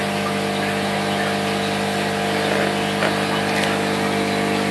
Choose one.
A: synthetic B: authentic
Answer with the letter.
B